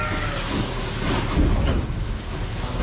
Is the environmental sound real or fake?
fake